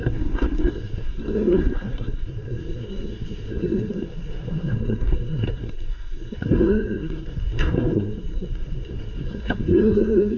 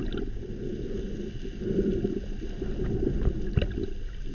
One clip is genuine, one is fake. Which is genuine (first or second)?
second